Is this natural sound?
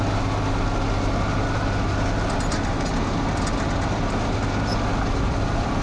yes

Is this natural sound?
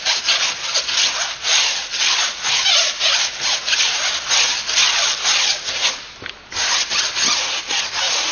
yes